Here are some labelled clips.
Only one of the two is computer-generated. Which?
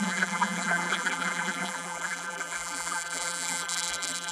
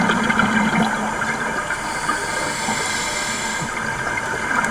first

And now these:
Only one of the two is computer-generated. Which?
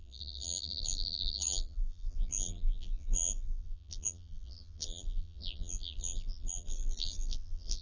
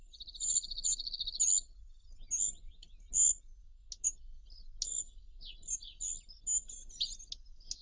first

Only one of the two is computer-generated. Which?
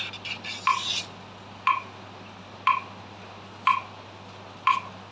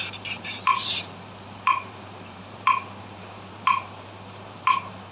second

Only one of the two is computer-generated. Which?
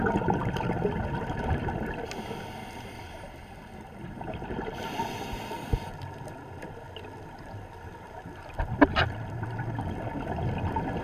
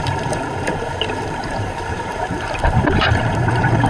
second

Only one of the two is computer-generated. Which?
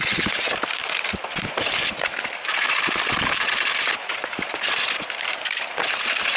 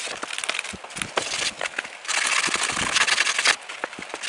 first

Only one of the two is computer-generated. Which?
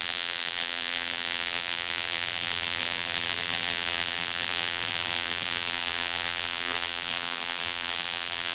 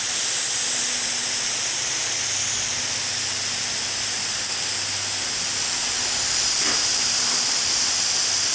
first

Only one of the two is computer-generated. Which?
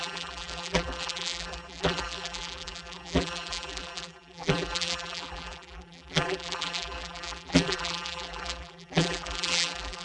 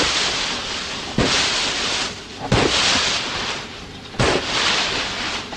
first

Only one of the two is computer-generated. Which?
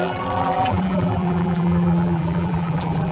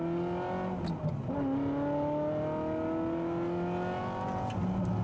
first